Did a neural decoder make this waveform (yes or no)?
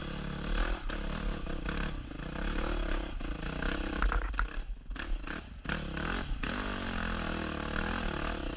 no